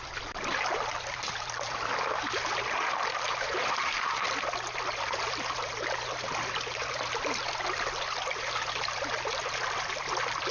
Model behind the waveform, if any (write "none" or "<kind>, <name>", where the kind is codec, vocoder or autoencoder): none